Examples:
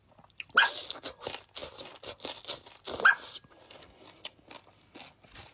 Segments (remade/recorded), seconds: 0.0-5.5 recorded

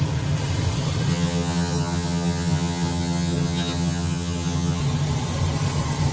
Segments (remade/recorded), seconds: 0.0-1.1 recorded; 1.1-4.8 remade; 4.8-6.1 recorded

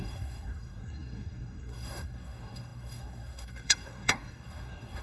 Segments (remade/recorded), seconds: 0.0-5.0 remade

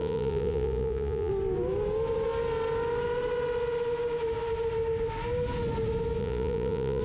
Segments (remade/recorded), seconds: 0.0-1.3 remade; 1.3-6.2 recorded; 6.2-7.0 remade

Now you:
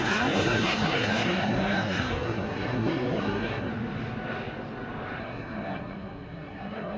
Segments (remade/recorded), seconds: 0.0-3.7 remade; 3.7-5.2 recorded; 5.2-7.0 remade